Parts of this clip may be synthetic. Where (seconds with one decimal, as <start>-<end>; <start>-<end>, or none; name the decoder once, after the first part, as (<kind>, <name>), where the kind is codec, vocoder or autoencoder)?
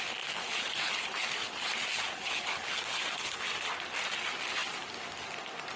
0.4-3.4 (codec, HILCodec)